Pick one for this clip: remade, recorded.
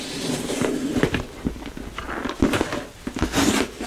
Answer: recorded